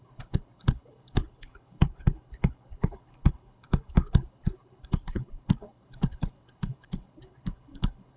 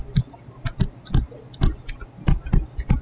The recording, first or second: second